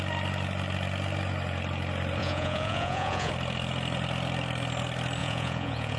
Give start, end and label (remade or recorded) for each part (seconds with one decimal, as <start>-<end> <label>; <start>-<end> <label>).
0.0-2.2 recorded; 2.2-3.3 remade; 3.3-5.2 recorded; 5.2-6.0 remade